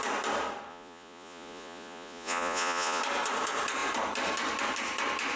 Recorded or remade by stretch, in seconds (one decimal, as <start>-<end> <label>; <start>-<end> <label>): 0.0-0.7 recorded; 0.7-3.0 remade; 3.0-5.4 recorded